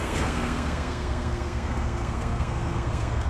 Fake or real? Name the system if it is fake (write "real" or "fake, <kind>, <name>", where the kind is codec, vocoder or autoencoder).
fake, codec, SNAC